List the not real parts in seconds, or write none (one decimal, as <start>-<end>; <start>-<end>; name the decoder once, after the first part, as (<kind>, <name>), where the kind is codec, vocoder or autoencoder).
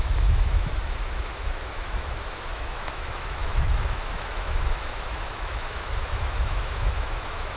0.0-7.6 (autoencoder, DAC-VAE)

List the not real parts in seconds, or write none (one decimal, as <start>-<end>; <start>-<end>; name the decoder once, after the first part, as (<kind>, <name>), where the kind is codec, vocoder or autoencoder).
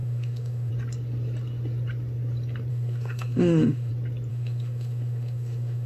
0.0-0.7 (autoencoder, DAC-VAE); 2.7-3.9; 4.3-5.9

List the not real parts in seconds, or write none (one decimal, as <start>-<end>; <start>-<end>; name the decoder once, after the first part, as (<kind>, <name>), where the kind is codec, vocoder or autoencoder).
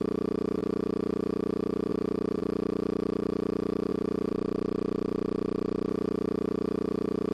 0.0-4.3 (autoencoder, DAC-VAE); 5.9-7.3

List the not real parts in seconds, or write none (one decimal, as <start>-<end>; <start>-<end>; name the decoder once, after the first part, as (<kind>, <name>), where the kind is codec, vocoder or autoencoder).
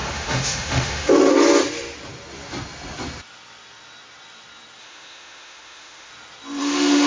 0.0-1.3 (autoencoder, DAC-VAE); 4.8-6.1; 6.6-7.1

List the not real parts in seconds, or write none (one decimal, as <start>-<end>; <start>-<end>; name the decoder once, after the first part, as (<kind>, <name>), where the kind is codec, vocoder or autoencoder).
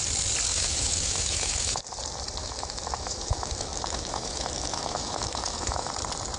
0.5-1.8 (autoencoder, DAC-VAE); 2.4-5.9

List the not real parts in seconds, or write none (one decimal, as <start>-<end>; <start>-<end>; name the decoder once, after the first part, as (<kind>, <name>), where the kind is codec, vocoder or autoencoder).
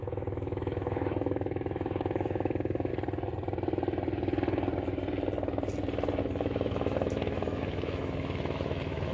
0.0-2.9 (autoencoder, DAC-VAE); 6.2-9.1